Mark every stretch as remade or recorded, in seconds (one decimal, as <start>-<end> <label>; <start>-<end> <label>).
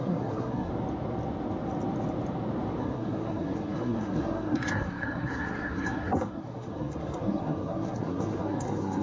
0.0-0.7 remade; 0.7-2.8 recorded; 2.8-9.0 remade